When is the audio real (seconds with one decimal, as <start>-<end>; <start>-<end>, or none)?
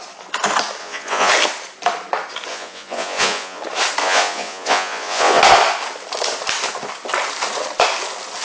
0.0-0.8; 1.3-2.5; 3.6-4.0; 5.4-8.4